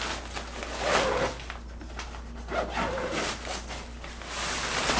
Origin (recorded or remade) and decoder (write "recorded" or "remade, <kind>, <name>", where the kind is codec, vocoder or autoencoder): recorded